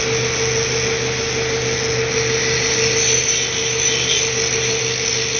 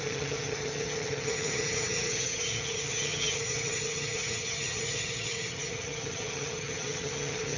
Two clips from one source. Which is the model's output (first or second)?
second